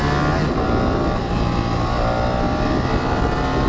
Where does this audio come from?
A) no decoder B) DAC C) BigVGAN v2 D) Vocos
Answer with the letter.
A